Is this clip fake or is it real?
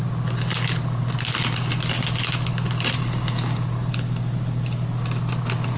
real